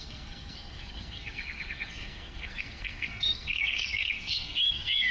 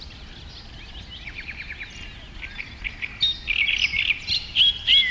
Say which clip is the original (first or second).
second